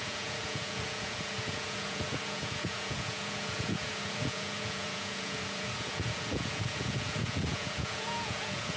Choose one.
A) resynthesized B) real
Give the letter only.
A